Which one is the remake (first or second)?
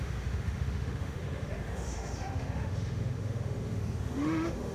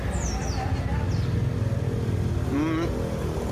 first